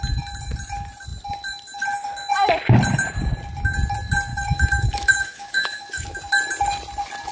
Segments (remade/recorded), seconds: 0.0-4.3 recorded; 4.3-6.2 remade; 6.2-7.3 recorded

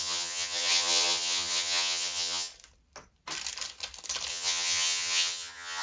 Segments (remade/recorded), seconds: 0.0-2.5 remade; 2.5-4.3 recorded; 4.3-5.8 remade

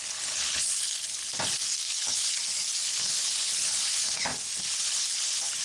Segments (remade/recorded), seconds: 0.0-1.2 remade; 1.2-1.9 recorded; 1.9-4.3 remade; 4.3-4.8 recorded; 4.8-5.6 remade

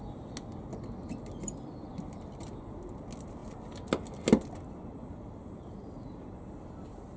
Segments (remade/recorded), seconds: 0.0-7.2 recorded

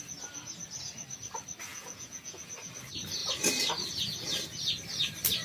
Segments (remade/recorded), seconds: 0.0-1.7 recorded; 1.7-2.4 remade; 2.4-5.4 recorded

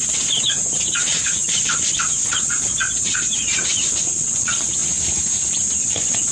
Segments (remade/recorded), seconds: 0.0-4.8 remade; 4.8-5.8 recorded; 5.8-6.3 remade

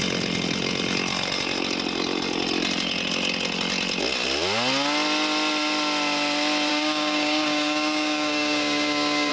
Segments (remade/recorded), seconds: 0.0-6.7 recorded; 6.7-9.3 remade

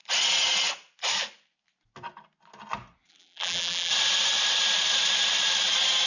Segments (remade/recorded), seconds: 0.0-3.1 recorded; 3.1-3.9 remade; 3.9-6.1 recorded